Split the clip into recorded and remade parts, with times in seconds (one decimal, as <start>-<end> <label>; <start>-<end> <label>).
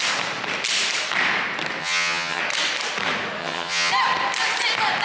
0.0-1.8 recorded; 1.8-2.4 remade; 2.4-3.4 recorded; 3.4-3.9 remade; 3.9-5.0 recorded